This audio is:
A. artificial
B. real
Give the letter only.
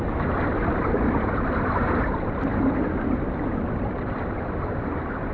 B